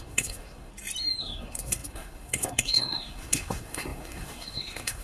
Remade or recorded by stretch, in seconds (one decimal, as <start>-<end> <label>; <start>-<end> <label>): 0.0-0.7 remade; 0.7-1.2 recorded; 1.2-5.0 remade

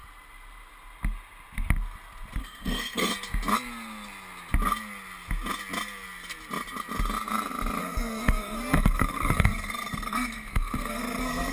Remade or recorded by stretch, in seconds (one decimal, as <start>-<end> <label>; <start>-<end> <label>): 0.0-2.4 recorded; 2.4-3.1 remade; 3.1-7.8 recorded; 7.8-11.5 remade

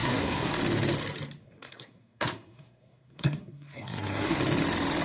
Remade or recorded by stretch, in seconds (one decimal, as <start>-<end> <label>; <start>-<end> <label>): 0.0-0.5 remade; 0.5-1.4 recorded; 1.4-4.4 remade; 4.4-5.0 recorded

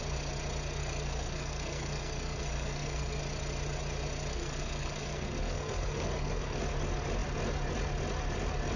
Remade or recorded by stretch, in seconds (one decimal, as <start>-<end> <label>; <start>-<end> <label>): 0.0-0.8 recorded; 0.8-3.2 remade; 3.2-4.3 recorded; 4.3-6.6 remade; 6.6-8.8 recorded

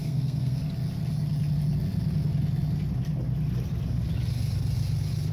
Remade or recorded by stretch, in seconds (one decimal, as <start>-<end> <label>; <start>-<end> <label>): 0.0-0.6 remade; 0.6-5.3 recorded

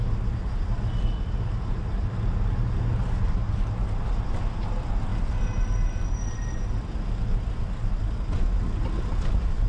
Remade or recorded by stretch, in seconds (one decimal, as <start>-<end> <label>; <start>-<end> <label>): 0.0-9.7 recorded

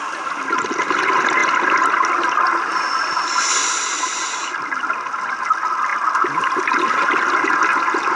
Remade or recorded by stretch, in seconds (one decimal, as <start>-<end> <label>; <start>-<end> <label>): 0.0-8.2 recorded